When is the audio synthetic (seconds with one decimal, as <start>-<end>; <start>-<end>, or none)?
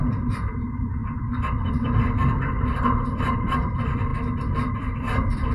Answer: 0.0-4.1; 4.7-5.5